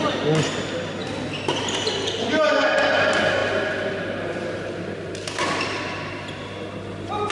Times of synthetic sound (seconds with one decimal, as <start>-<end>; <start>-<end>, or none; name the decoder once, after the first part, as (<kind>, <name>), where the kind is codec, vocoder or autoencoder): none